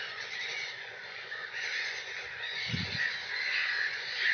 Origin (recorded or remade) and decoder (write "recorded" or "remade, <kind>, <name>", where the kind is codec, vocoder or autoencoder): remade, vocoder, Vocos